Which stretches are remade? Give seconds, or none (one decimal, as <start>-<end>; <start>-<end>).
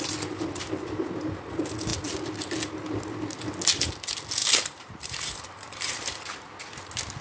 4.4-5.9